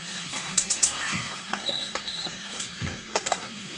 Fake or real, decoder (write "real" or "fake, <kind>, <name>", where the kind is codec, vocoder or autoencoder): fake, codec, SNAC